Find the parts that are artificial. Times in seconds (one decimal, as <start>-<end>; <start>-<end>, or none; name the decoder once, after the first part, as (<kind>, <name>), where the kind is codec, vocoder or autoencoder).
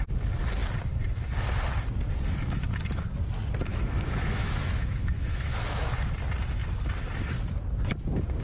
3.7-6.1 (autoencoder, DAC-VAE)